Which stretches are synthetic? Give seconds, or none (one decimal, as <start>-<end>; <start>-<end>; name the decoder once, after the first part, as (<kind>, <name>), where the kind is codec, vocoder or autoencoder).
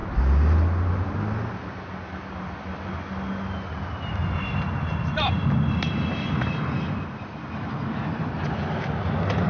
none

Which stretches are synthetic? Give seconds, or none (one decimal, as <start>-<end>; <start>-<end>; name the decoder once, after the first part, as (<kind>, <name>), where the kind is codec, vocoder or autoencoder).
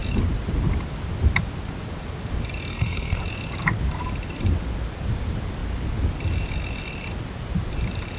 2.7-3.2 (codec, SNAC)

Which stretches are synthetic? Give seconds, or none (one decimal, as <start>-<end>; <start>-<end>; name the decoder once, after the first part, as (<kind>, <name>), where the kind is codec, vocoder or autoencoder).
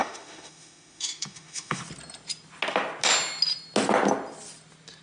0.0-1.8 (autoencoder, DAC-VAE)